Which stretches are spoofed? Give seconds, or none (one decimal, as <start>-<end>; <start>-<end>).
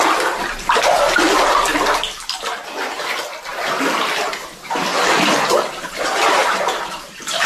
3.5-4.0; 4.9-6.3